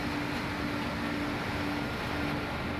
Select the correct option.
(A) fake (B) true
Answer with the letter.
B